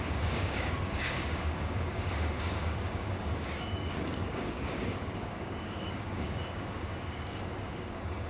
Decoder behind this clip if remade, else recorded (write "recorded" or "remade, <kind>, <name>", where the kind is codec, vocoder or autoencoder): remade, codec, DAC